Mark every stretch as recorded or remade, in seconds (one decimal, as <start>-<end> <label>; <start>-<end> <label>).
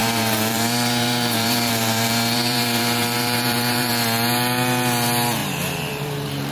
0.0-3.9 remade; 3.9-5.4 recorded; 5.4-6.5 remade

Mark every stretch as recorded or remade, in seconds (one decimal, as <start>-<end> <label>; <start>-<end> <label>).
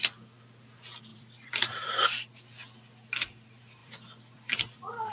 0.0-1.1 recorded; 1.1-1.9 remade; 1.9-3.8 recorded; 3.8-5.1 remade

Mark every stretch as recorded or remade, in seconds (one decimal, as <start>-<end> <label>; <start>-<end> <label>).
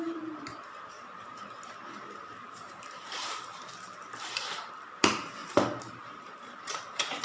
0.0-7.2 remade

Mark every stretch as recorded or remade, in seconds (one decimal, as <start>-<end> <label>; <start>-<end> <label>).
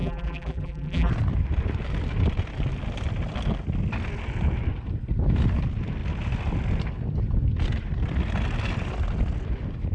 0.0-1.1 remade; 1.1-9.9 recorded